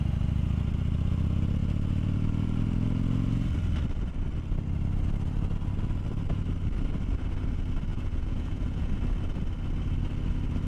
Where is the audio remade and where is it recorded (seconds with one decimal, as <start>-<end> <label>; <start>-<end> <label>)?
0.0-7.9 recorded; 7.9-8.9 remade; 8.9-10.7 recorded